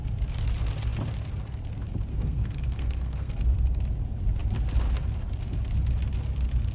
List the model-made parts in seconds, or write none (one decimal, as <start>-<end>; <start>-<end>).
2.1-3.3